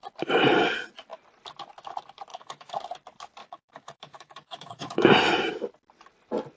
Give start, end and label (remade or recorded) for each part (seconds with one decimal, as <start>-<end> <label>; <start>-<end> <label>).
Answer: 0.0-2.3 recorded; 2.3-2.8 remade; 2.8-3.4 recorded; 3.4-5.5 remade; 5.5-6.6 recorded